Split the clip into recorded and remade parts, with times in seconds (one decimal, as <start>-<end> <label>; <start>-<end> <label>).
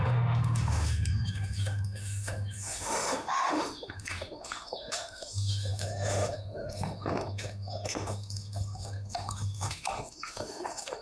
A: 0.0-11.0 remade